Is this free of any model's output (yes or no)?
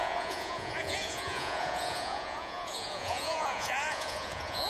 no